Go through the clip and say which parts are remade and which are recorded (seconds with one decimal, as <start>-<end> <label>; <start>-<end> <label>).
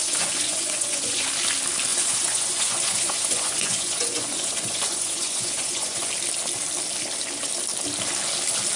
0.0-1.3 remade; 1.3-1.9 recorded; 1.9-6.1 remade; 6.1-8.8 recorded